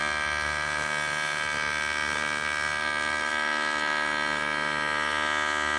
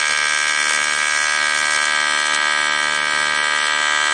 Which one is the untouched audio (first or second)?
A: second